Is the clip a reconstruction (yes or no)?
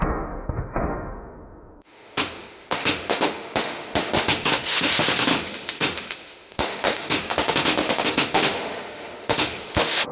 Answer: yes